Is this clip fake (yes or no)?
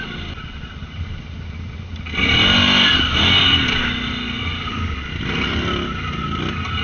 no